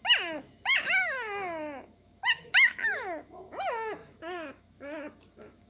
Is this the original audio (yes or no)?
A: no